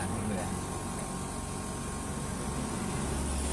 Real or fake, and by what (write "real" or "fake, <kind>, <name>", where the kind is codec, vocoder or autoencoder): real